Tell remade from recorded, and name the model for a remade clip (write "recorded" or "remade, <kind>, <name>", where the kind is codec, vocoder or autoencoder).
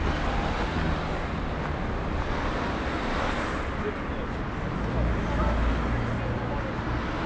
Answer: recorded